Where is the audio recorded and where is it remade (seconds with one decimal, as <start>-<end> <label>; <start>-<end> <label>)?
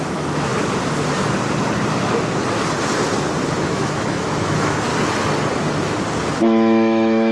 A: 0.0-0.5 remade; 0.5-3.6 recorded; 3.6-4.9 remade; 4.9-6.3 recorded; 6.3-7.3 remade